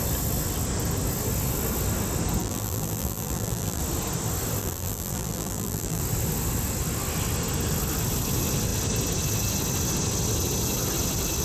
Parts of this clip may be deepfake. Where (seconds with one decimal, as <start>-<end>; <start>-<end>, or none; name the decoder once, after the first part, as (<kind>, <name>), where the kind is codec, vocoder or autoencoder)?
2.4-3.8 (vocoder, BigVGAN v2); 4.6-6.0